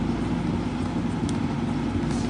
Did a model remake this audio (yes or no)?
no